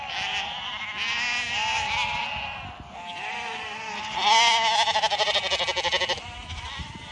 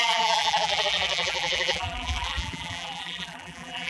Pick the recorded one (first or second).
first